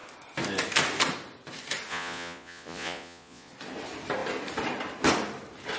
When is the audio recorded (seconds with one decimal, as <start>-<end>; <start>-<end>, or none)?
0.0-1.9; 3.5-5.8